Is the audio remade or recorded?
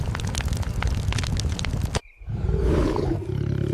recorded